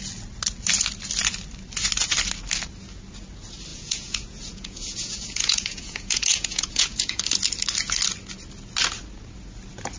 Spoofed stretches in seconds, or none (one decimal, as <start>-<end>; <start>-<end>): 3.7-7.2